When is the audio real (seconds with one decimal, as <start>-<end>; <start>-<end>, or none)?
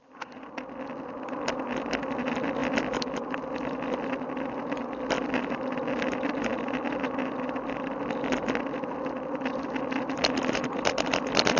0.0-11.6